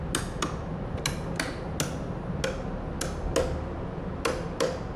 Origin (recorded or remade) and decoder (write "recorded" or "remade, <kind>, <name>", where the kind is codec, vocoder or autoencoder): recorded